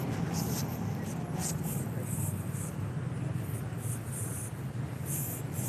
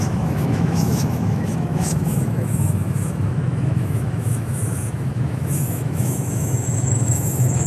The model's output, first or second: second